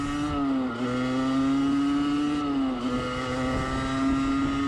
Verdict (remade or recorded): recorded